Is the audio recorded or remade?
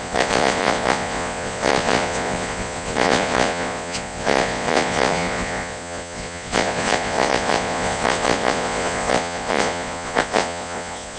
remade